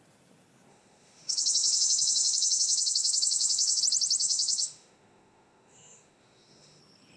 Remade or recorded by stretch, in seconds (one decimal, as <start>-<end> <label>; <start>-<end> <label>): 0.0-0.7 recorded; 0.7-3.8 remade; 3.8-4.2 recorded; 4.2-6.8 remade; 6.8-7.2 recorded